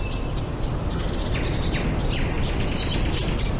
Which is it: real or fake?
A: real